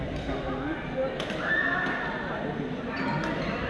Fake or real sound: real